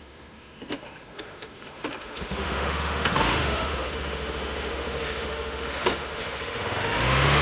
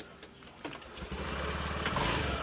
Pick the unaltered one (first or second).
second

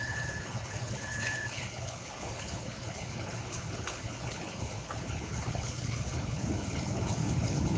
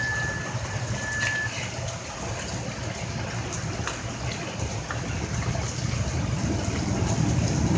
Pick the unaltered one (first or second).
second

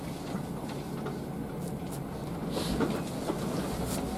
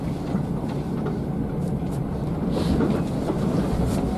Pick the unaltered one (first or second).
first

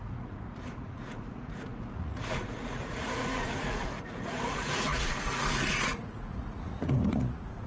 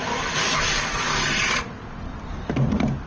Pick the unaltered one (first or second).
second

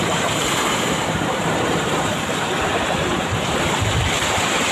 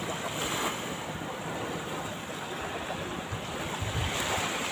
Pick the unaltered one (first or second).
second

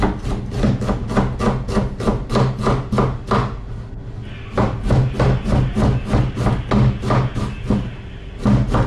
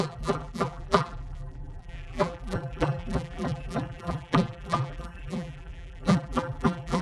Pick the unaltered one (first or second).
first